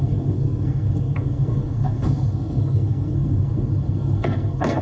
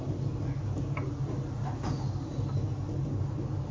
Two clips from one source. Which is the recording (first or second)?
second